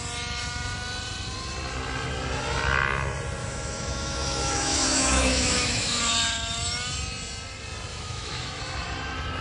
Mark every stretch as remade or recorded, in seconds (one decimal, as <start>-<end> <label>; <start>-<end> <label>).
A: 0.0-3.4 recorded; 3.4-6.0 remade; 6.0-7.9 recorded; 7.9-8.6 remade; 8.6-9.4 recorded